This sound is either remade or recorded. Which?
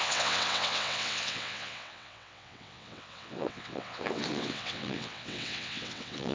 remade